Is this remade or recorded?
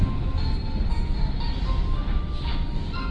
recorded